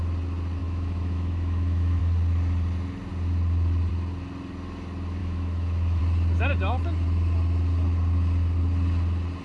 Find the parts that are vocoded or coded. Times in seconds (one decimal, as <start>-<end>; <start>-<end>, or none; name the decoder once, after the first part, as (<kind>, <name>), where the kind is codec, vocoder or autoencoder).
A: 0.6-2.0 (autoencoder, DAC-VAE); 5.2-6.0